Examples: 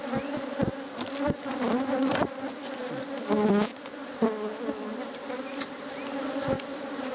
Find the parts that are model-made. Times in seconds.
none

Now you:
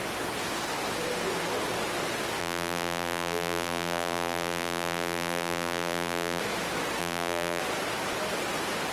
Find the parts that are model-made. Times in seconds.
2.4-6.4 (vocoder, BigVGAN v2); 7.0-7.6

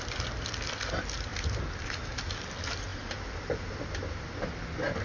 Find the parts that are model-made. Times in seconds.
none

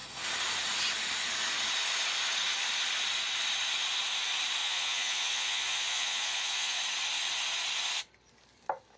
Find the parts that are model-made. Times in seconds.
4.6-6.8 (vocoder, Vocos)

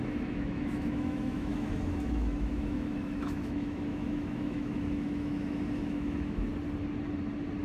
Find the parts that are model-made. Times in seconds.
0.0-6.5 (autoencoder, DAC-VAE)

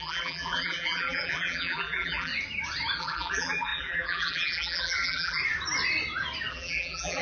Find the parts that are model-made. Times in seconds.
0.0-2.3 (vocoder, BigVGAN v2); 3.0-5.4; 6.5-7.2

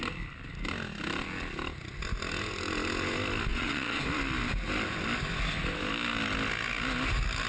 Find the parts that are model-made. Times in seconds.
3.5-4.0 (vocoder, Vocos)

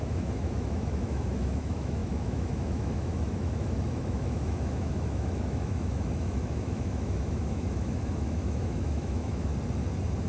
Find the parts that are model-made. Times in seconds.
0.0-9.5 (autoencoder, DAC-VAE)